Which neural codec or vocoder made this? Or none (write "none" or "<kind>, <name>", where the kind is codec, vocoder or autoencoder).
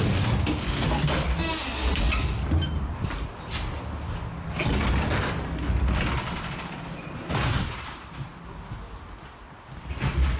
none